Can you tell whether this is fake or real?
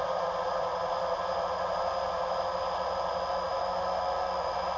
real